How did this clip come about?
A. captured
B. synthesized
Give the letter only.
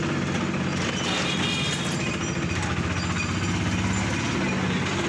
A